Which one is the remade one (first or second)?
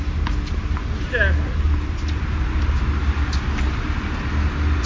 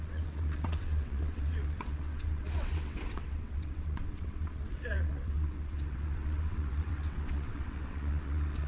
second